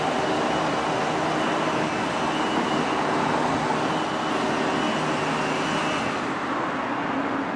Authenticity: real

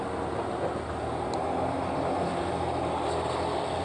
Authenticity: real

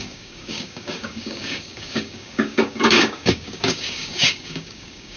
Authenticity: fake